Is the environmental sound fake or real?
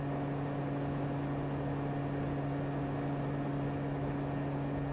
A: real